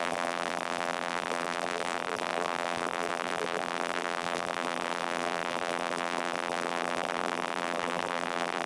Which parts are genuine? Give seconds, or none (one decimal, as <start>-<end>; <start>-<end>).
none